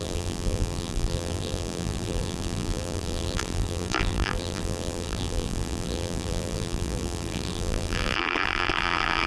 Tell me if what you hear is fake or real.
fake